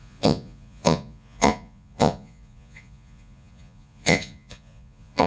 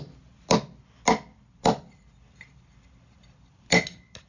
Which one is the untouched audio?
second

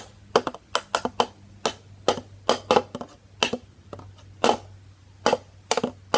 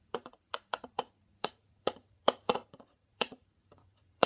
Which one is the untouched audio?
first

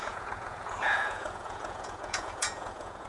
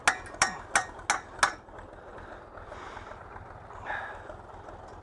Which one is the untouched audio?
second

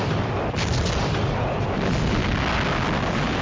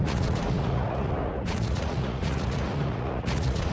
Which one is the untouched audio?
first